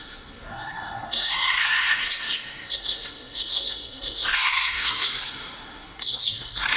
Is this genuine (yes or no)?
no